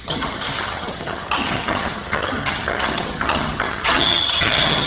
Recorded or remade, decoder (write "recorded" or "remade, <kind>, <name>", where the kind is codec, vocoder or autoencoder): remade, vocoder, HiFi-GAN